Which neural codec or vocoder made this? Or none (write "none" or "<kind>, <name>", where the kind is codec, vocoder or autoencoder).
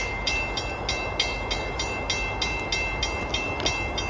none